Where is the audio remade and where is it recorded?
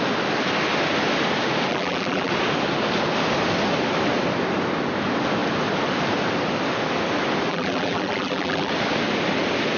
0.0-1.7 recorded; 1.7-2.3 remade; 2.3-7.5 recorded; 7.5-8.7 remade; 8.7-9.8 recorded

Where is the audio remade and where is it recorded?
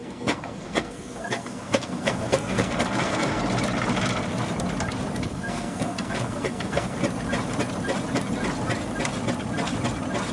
0.0-3.4 remade; 3.4-5.3 recorded; 5.3-7.0 remade; 7.0-10.3 recorded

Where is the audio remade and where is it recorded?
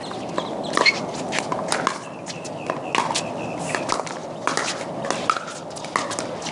0.0-6.5 recorded